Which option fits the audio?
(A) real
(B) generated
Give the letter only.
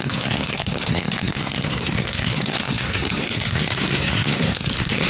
B